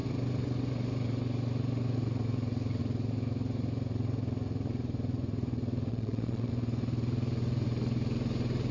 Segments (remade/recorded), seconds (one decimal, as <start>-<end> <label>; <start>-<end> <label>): 0.0-5.9 recorded; 5.9-6.5 remade; 6.5-8.7 recorded